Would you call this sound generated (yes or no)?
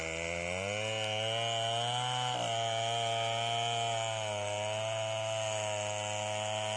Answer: no